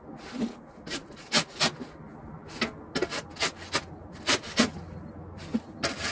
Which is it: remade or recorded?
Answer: recorded